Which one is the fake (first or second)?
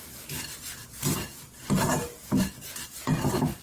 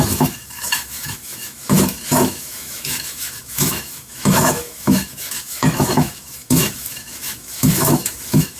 second